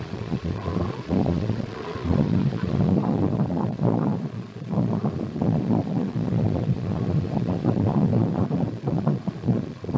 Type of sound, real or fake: fake